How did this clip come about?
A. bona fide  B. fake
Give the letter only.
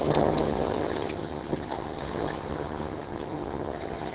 B